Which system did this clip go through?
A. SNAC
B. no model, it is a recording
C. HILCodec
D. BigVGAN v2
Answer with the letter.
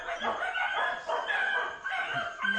B